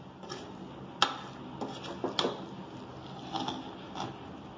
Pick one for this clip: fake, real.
real